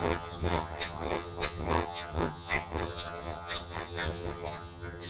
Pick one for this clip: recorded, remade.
remade